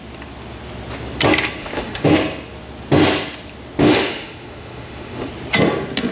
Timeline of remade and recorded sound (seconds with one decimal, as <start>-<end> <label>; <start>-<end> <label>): 0.0-1.6 recorded; 1.6-2.1 remade; 2.1-3.8 recorded; 3.8-5.3 remade; 5.3-6.1 recorded